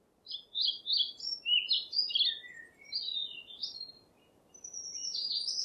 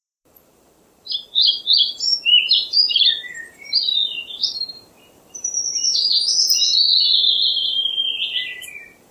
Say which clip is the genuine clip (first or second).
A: first